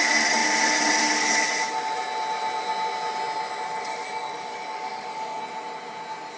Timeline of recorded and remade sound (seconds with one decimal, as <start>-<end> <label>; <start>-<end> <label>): 0.0-3.9 recorded; 3.9-5.4 remade; 5.4-6.4 recorded